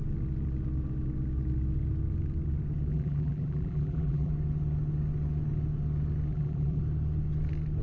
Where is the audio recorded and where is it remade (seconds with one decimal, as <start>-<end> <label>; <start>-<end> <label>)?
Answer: 0.0-2.9 recorded; 2.9-4.3 remade; 4.3-6.3 recorded; 6.3-6.8 remade; 6.8-7.8 recorded